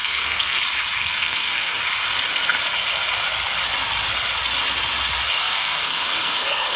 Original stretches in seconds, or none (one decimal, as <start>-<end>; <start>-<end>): 0.6-1.0; 1.8-5.4